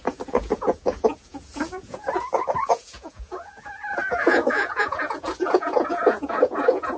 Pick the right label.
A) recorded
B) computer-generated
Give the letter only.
B